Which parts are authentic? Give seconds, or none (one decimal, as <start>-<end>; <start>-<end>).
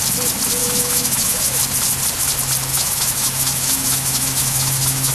0.0-0.6; 1.6-2.7